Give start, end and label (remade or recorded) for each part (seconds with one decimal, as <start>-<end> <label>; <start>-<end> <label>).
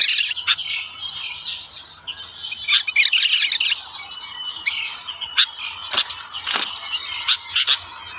0.0-8.2 recorded